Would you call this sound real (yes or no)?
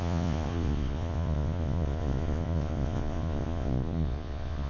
no